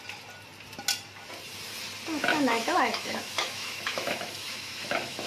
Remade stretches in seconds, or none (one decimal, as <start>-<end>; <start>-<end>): 2.3-5.3